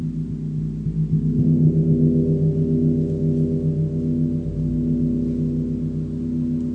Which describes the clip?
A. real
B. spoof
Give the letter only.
A